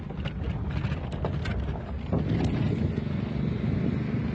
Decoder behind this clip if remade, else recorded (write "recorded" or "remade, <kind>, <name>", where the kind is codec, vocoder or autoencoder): recorded